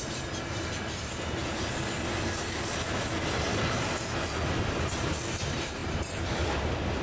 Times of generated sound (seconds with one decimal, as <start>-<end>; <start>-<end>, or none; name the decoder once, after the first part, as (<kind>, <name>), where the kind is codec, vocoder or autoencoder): none